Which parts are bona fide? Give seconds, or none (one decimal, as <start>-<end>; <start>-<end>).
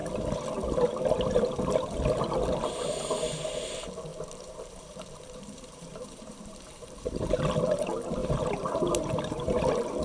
0.0-4.1; 7.4-8.2; 9.6-10.0